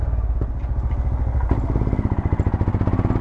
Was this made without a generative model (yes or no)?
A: yes